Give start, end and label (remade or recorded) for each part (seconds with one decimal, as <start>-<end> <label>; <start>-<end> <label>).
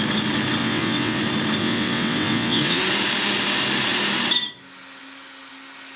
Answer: 0.0-0.6 recorded; 0.6-1.2 remade; 1.2-1.6 recorded; 1.6-2.8 remade; 2.8-6.0 recorded